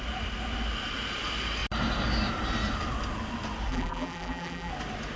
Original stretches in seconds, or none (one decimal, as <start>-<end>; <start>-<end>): 0.0-3.7; 4.7-5.2

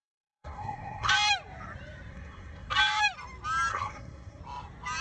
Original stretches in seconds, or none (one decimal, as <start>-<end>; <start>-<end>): 1.1-2.1; 2.7-3.7; 4.4-5.0

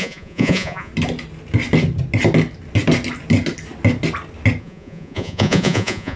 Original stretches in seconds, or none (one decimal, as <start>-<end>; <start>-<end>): 0.9-4.6

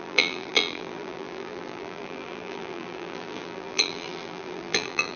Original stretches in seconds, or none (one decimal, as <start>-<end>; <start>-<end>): none

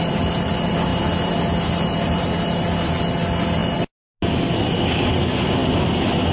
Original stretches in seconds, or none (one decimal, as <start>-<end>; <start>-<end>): 0.0-6.3